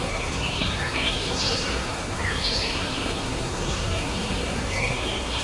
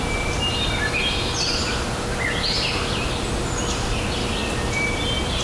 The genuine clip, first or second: second